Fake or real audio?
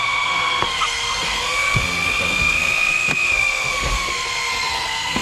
fake